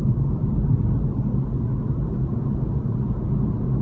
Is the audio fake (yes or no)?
no